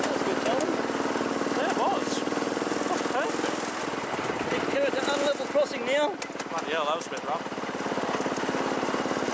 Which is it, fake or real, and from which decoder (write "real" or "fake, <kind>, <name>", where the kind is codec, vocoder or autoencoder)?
real